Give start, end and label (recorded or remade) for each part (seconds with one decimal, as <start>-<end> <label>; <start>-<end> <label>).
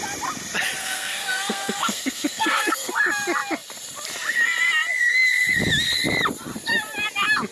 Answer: 0.0-0.8 recorded; 0.8-2.9 remade; 2.9-7.5 recorded